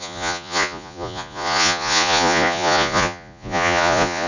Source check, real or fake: fake